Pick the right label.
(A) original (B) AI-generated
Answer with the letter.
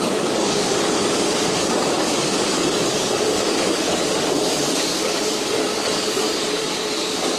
B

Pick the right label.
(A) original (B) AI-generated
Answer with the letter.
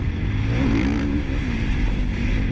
A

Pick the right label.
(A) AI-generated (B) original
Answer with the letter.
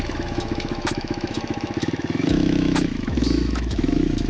A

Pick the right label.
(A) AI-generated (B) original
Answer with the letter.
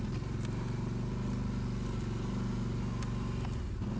B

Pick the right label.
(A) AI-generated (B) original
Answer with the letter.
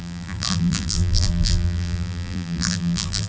A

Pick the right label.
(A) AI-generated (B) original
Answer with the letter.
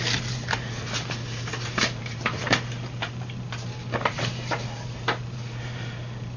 A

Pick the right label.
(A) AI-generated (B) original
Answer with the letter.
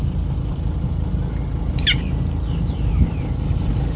B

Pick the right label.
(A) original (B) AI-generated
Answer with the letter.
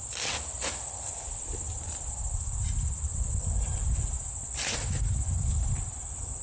A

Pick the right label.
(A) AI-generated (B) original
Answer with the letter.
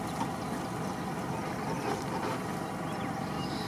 B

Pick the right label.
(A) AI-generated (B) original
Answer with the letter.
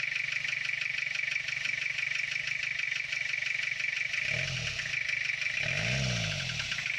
B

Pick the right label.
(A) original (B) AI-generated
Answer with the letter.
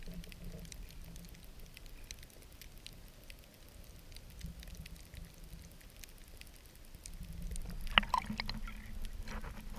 A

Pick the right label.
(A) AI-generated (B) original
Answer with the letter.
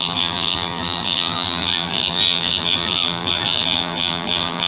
A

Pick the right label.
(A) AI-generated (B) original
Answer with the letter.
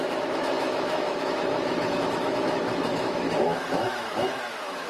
A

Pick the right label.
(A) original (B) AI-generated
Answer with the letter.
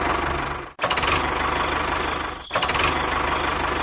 A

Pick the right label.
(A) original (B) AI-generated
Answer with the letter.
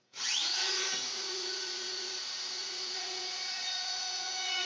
B